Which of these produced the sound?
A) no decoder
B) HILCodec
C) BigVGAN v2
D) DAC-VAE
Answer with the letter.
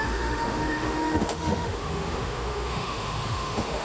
D